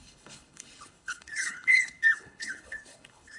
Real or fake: fake